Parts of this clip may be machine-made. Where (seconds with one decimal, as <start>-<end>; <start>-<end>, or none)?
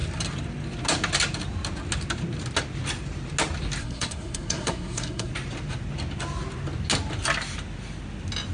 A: 3.8-5.3